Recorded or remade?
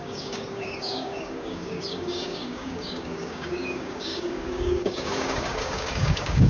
remade